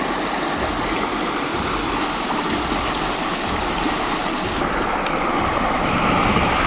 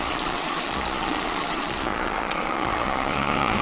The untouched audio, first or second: first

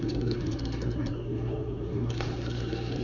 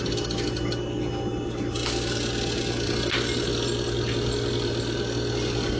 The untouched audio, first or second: second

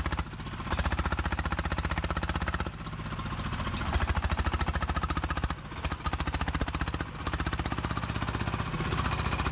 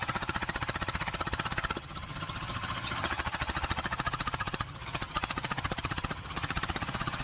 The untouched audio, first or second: first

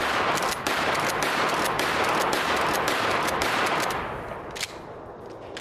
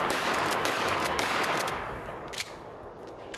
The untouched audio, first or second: first